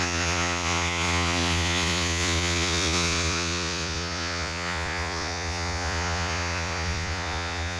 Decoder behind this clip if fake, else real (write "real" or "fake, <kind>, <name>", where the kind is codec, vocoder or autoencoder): fake, vocoder, Vocos